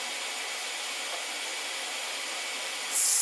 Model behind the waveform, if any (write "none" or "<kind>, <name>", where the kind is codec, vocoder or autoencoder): none